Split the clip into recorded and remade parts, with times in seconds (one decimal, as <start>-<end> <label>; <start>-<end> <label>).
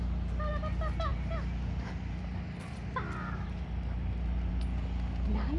0.0-5.6 recorded